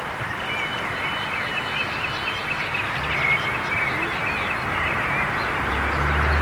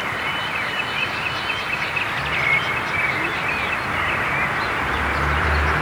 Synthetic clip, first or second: second